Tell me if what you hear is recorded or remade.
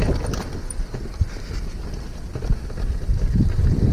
recorded